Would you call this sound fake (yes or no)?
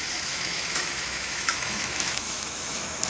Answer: yes